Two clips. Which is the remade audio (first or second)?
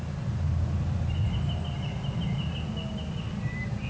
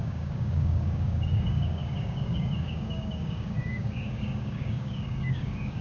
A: second